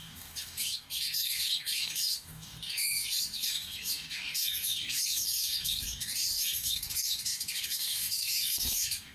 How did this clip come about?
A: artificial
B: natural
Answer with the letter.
A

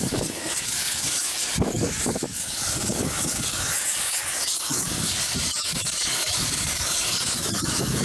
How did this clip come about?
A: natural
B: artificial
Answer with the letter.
B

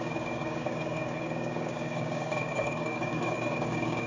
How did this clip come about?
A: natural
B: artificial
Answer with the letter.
B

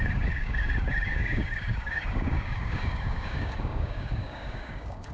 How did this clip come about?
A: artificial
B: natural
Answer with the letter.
A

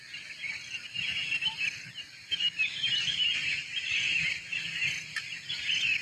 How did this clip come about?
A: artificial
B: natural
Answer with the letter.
B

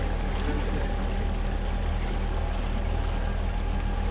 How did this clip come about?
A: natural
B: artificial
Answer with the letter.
A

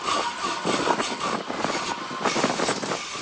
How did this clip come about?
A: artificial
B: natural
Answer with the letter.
B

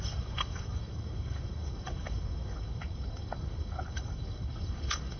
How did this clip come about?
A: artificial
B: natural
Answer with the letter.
A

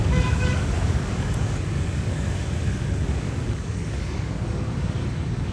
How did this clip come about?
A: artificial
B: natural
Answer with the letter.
A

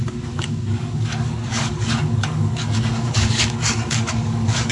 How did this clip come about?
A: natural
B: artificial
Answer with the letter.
B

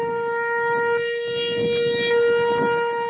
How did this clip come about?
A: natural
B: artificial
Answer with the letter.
A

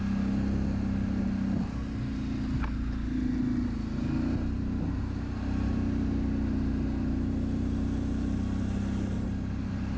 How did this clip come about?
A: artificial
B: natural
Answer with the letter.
B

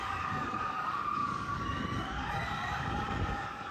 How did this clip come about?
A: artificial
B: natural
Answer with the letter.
A